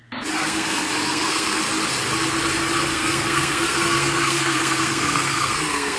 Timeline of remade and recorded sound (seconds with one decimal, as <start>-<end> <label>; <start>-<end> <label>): 0.0-0.4 recorded; 0.4-1.6 remade; 1.6-2.9 recorded; 2.9-6.0 remade